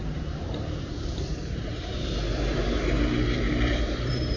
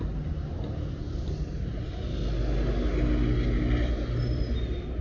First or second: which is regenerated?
first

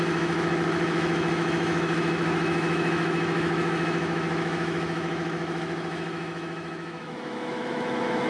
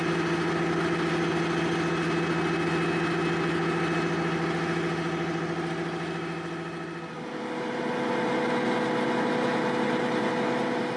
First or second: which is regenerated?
first